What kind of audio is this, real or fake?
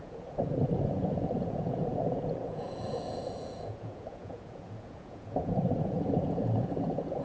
fake